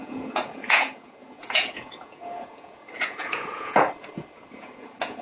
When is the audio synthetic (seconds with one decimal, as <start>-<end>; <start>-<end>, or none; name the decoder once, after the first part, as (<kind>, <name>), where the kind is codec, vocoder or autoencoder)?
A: 0.0-5.2 (vocoder, Vocos)